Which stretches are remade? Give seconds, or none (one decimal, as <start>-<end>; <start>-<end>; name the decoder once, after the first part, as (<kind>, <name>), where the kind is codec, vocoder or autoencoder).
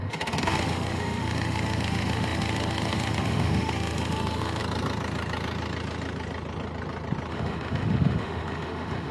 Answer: 0.0-4.6 (autoencoder, DAC-VAE); 7.3-9.1